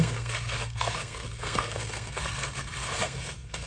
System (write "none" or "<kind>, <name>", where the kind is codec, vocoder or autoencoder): codec, SNAC